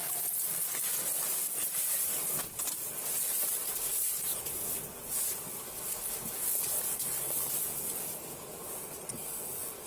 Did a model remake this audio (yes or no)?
no